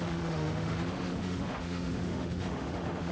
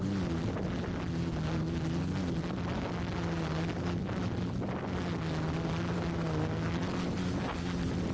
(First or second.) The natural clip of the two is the second